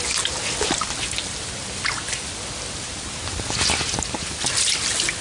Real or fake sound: real